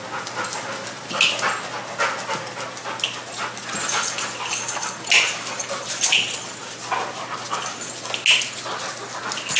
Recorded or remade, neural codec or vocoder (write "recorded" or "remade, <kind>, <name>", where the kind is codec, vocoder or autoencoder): recorded